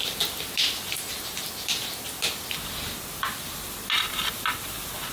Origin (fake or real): real